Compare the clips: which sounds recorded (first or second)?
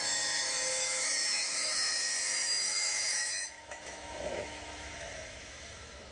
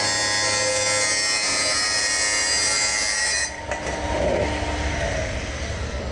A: second